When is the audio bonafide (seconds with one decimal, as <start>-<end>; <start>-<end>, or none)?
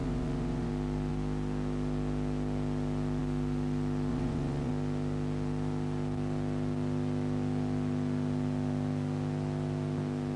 0.7-4.1; 4.7-10.4